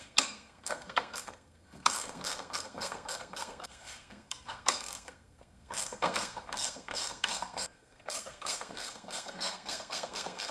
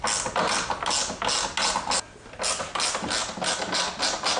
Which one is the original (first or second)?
second